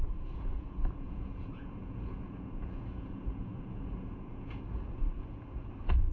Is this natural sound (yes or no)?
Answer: no